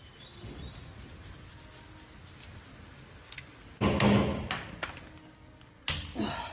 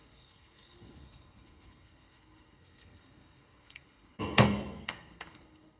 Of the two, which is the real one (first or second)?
first